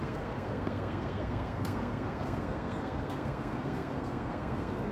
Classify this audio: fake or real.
fake